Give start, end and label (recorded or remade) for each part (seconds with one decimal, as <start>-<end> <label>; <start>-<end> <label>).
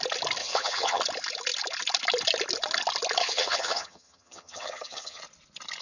0.0-0.4 recorded; 0.4-1.0 remade; 1.0-3.2 recorded; 3.2-5.2 remade; 5.2-5.8 recorded